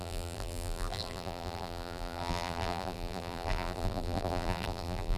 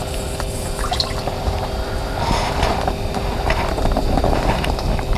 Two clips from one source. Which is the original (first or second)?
second